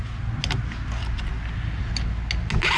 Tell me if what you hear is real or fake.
real